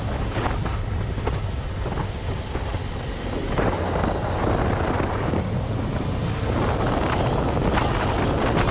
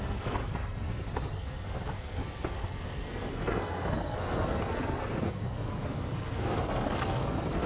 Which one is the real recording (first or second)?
first